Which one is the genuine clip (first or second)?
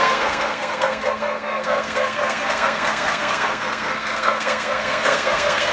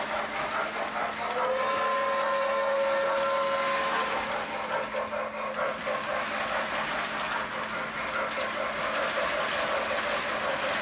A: second